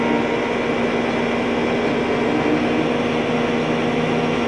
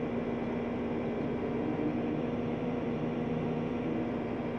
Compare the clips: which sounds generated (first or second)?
second